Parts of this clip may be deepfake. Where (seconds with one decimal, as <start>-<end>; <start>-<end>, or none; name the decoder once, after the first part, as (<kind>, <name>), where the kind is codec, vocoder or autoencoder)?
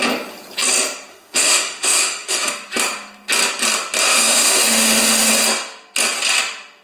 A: 1.1-2.5 (autoencoder, DAC-VAE); 4.0-5.3